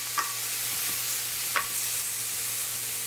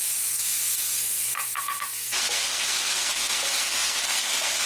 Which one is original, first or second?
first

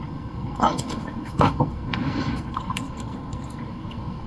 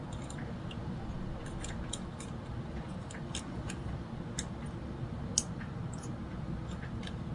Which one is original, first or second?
second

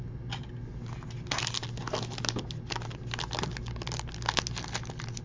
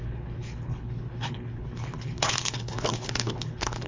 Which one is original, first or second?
first